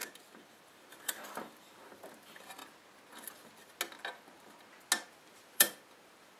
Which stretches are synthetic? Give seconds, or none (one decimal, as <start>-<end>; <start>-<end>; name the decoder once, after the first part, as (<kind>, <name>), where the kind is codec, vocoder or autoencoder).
0.9-2.6 (vocoder, BigVGAN v2); 5.1-6.4